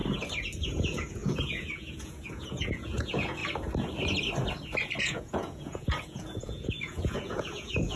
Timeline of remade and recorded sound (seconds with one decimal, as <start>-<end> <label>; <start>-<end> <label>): 0.0-0.6 recorded; 0.6-3.4 remade; 3.4-5.0 recorded; 5.0-8.0 remade